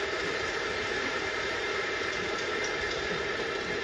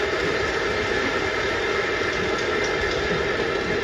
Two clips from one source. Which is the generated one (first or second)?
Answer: first